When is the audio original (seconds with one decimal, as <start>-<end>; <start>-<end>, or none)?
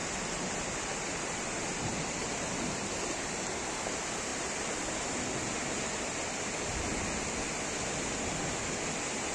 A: 2.3-9.3